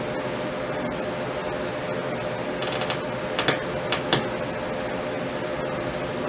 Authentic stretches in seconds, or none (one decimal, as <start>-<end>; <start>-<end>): 0.0-6.3